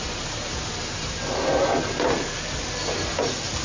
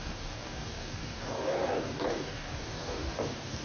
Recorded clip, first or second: first